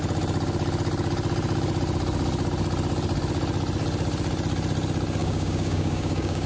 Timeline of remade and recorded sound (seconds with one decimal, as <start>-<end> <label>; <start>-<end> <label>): 0.0-5.2 recorded; 5.2-6.5 remade